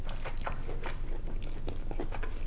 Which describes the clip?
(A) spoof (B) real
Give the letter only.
B